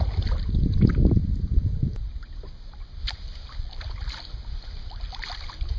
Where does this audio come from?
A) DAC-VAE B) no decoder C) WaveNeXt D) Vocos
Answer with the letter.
B